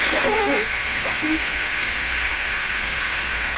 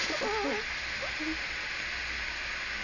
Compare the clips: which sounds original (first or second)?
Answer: second